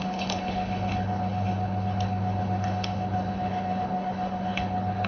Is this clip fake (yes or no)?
yes